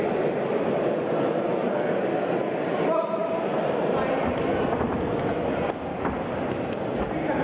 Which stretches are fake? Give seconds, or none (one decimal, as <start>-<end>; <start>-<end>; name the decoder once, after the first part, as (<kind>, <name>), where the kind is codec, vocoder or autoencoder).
none